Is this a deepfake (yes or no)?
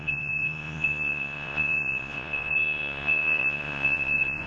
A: yes